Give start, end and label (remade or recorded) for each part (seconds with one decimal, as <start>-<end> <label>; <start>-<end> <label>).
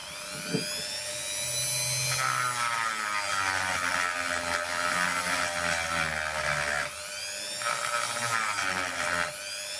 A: 0.0-9.8 recorded